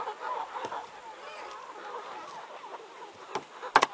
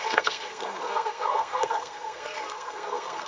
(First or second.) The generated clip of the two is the second